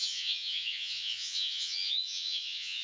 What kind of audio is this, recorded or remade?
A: remade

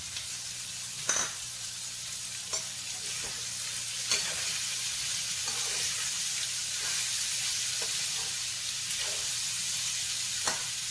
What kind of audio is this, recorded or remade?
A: recorded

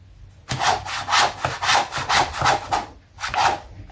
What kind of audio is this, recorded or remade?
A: recorded